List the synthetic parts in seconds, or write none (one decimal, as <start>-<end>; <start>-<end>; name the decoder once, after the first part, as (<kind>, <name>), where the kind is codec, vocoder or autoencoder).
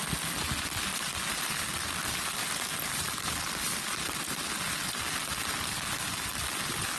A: none